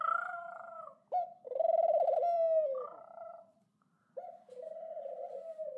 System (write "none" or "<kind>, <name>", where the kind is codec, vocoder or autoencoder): vocoder, BigVGAN v2